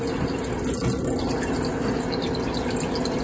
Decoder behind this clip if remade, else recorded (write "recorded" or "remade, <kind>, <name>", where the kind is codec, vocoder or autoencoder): recorded